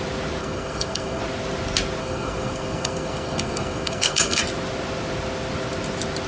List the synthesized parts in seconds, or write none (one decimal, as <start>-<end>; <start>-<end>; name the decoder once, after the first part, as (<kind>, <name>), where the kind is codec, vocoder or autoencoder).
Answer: 0.4-1.2 (codec, SNAC); 2.0-4.4